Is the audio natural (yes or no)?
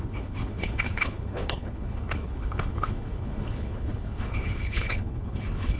no